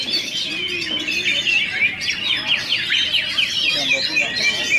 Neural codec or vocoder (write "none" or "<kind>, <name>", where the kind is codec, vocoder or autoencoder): none